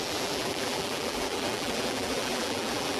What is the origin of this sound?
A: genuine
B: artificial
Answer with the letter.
B